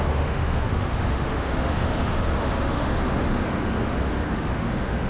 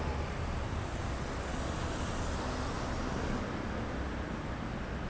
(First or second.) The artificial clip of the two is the first